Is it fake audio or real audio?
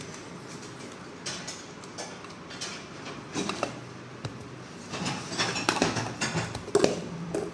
real